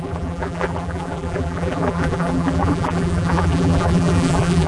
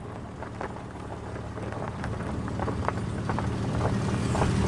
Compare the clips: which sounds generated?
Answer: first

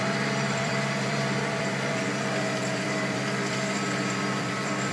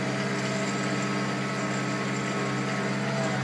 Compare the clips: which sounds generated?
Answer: first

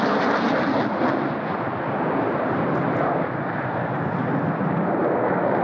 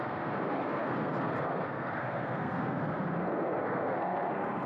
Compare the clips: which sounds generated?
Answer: second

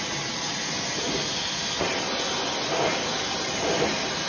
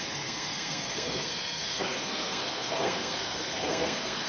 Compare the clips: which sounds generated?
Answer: second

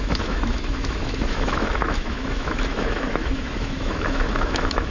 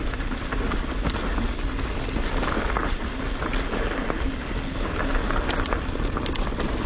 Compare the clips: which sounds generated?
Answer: first